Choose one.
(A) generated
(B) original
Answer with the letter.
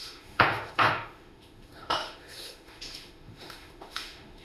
A